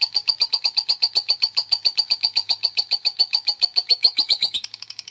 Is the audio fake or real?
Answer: fake